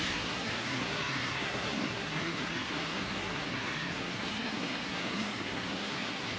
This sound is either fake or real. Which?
fake